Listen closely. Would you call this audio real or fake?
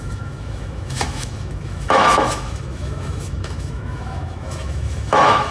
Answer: fake